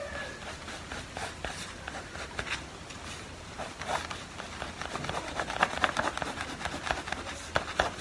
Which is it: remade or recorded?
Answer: recorded